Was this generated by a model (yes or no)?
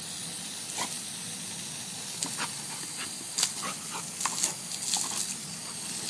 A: no